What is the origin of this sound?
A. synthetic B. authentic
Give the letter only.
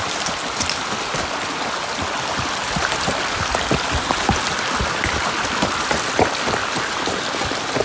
B